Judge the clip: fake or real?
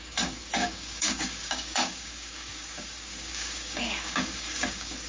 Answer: fake